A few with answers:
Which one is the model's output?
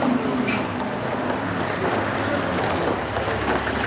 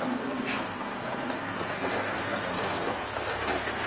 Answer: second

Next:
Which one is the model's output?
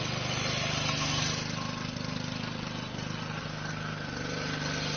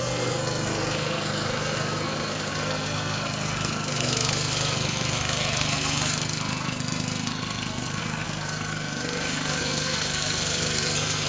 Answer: second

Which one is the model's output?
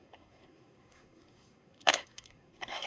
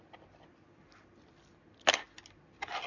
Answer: first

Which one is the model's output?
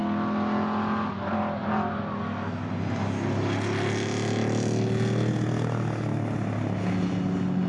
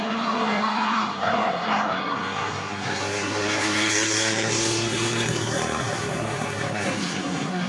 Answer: second